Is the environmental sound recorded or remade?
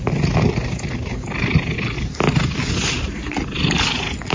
recorded